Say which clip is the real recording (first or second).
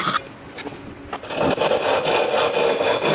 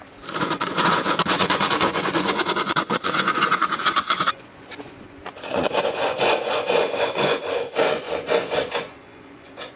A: first